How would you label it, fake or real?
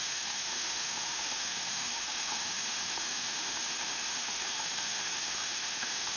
fake